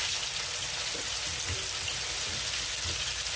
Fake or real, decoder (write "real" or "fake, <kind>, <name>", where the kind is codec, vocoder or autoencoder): real